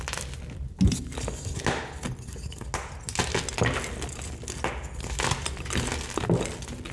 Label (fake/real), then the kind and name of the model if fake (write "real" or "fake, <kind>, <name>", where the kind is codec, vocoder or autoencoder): real